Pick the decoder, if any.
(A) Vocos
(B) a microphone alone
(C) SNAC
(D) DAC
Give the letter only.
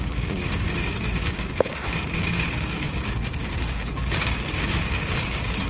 D